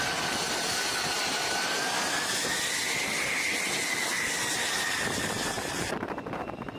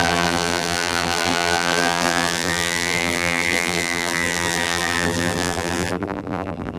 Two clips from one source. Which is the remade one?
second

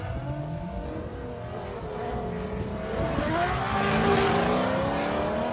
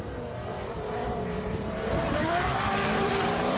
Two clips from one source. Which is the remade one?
second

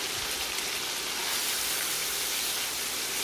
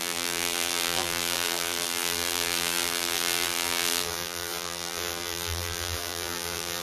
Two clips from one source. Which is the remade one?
second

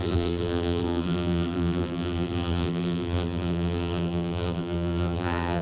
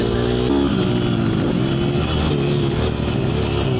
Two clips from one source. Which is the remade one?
first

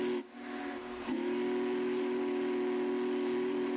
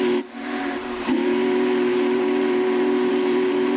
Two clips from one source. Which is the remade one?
second